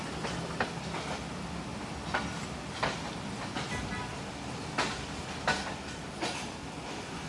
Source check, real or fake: real